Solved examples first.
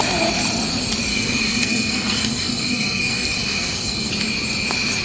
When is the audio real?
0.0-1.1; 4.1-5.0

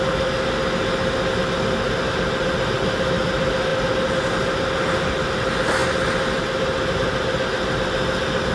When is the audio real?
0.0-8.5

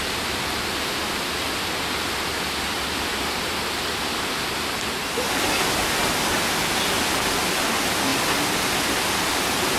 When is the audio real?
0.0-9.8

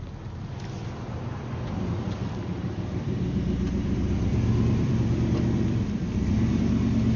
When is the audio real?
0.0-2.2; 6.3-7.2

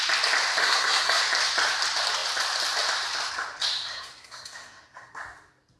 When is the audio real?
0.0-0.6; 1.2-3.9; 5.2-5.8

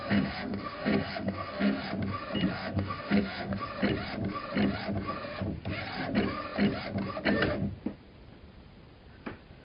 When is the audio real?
1.8-2.5; 3.6-9.6